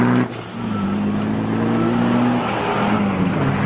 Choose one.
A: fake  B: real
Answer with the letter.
B